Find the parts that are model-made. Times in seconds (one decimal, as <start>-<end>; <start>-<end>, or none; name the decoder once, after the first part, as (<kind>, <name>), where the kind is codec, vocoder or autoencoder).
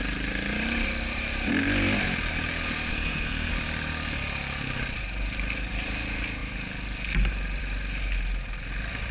2.9-3.5 (codec, SNAC)